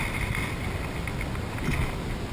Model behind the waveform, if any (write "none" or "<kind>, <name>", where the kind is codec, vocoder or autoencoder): none